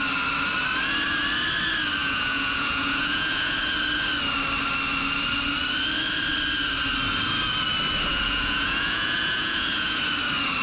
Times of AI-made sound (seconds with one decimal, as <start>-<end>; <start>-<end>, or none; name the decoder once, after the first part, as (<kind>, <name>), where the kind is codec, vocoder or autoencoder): 2.0-3.6 (vocoder, Vocos); 8.1-10.0